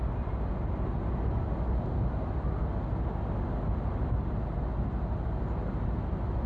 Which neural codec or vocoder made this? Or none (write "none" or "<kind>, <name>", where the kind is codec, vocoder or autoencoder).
none